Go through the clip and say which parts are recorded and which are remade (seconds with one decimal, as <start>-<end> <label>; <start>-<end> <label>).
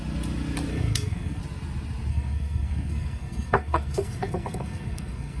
0.0-0.7 recorded; 0.7-1.4 remade; 1.4-2.1 recorded; 2.1-5.4 remade